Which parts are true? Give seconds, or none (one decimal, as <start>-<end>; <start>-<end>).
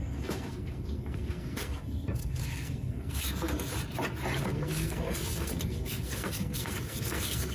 3.7-4.4